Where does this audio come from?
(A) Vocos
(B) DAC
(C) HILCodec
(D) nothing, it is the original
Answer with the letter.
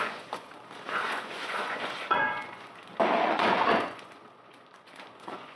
A